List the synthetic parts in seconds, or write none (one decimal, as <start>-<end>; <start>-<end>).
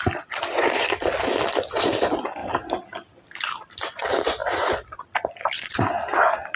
none